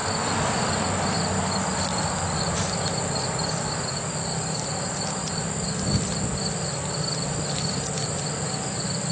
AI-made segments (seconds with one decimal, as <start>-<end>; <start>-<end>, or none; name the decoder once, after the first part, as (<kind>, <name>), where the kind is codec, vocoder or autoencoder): none

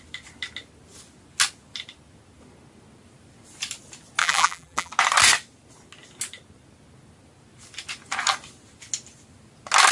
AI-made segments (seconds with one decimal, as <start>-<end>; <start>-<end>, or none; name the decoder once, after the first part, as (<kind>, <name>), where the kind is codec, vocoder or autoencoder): 4.2-4.9 (vocoder, BigVGAN v2)